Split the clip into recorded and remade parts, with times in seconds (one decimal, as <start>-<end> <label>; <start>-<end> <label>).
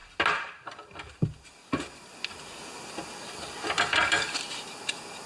0.0-5.3 recorded